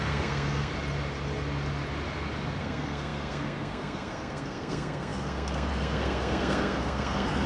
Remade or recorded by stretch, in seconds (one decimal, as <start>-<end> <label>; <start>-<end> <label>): 0.0-0.7 remade; 0.7-2.6 recorded; 2.6-7.5 remade